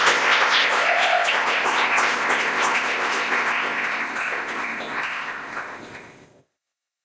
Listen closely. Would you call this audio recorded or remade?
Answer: remade